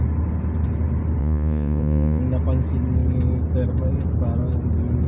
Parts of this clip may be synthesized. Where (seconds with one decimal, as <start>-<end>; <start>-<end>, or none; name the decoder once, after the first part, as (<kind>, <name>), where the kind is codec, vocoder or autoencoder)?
1.2-2.2 (vocoder, Vocos)